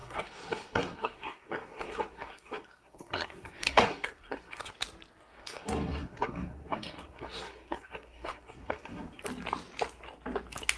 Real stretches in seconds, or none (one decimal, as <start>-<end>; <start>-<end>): 4.7-5.3; 9.2-10.8